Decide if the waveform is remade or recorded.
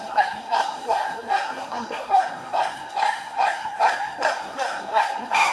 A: remade